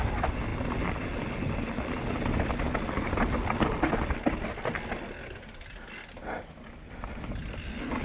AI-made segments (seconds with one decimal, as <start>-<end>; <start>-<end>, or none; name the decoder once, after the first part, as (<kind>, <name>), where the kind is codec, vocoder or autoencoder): none